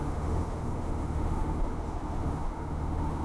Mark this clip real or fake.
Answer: fake